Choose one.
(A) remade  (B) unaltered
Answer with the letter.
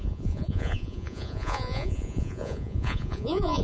A